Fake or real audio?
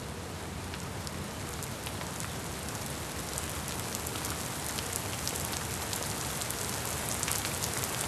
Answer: real